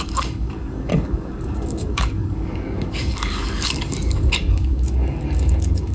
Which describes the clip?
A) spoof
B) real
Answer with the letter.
A